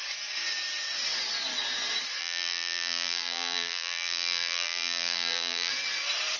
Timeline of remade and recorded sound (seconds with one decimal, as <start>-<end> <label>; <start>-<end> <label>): 0.0-2.2 recorded; 2.2-5.7 remade; 5.7-6.4 recorded